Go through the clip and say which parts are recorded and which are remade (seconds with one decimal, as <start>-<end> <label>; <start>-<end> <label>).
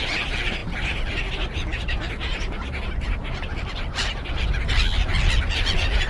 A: 0.0-6.1 recorded